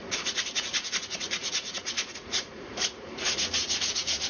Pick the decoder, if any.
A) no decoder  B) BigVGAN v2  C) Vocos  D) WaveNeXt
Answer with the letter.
C